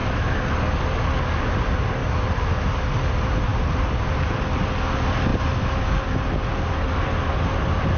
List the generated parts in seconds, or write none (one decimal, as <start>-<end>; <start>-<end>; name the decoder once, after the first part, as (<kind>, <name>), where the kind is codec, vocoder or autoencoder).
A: 2.0-2.8 (vocoder, BigVGAN v2)